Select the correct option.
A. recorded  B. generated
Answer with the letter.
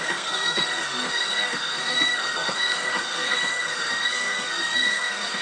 B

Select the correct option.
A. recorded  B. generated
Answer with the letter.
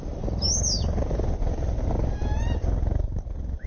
B